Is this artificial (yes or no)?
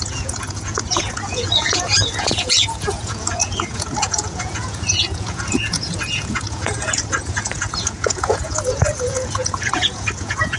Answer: yes